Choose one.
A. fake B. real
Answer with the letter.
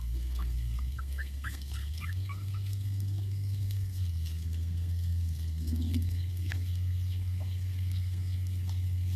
A